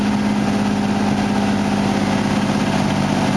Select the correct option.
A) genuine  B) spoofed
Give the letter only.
A